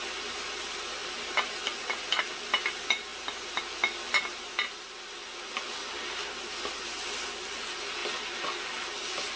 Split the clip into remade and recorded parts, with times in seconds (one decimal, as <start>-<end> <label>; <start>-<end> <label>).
0.0-9.4 recorded